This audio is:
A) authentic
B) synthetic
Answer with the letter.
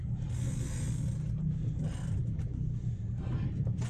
A